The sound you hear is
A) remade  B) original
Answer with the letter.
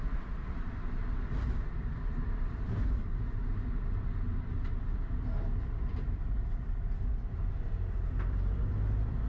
A